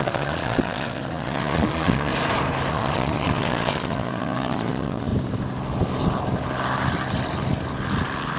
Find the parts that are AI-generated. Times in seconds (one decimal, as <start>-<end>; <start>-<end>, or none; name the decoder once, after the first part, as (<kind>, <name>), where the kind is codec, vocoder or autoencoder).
0.0-2.1 (vocoder, Vocos); 2.7-5.1